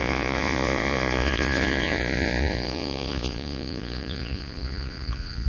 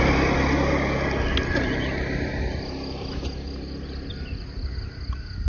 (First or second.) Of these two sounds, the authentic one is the second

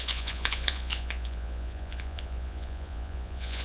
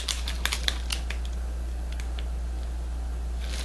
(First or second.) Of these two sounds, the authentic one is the second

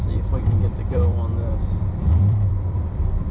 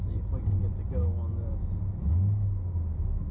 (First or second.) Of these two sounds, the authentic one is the second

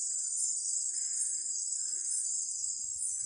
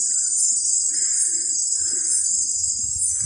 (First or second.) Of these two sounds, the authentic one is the second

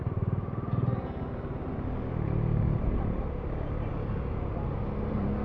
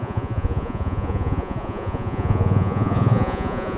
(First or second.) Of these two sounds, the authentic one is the first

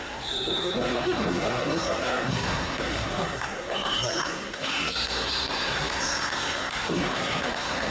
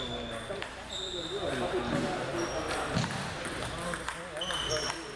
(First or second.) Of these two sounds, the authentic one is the second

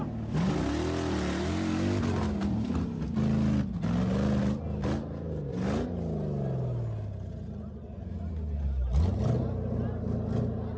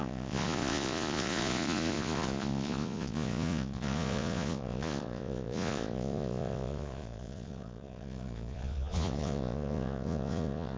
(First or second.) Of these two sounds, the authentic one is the first